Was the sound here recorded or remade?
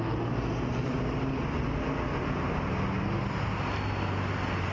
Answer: recorded